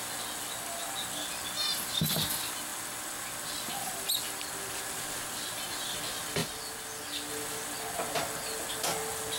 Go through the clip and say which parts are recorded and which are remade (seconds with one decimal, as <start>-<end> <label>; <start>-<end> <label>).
0.0-9.4 recorded